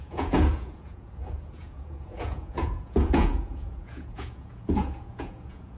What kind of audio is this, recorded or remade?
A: remade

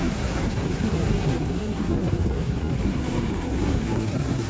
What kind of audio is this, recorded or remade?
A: remade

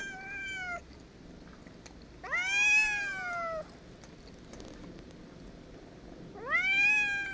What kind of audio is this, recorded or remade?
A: recorded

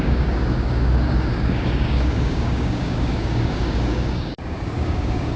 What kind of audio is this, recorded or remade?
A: remade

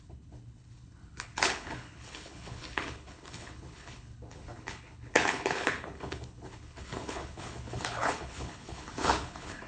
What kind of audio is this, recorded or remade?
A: remade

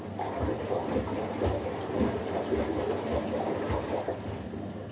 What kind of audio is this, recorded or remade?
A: recorded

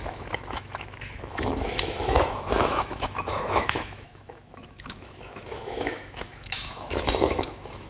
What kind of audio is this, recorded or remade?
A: remade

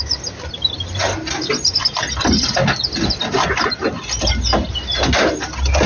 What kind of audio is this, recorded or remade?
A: recorded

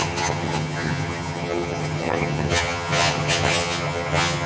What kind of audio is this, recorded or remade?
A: remade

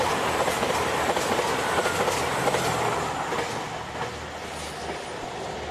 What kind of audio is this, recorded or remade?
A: recorded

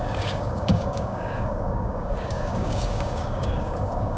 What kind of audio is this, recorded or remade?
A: remade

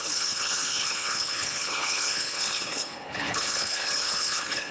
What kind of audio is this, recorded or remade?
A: remade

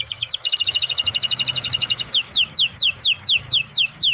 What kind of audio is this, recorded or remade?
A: remade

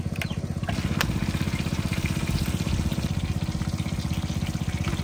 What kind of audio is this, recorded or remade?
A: recorded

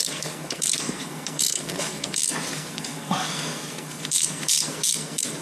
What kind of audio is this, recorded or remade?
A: remade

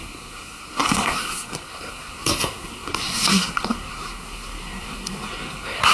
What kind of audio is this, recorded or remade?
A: remade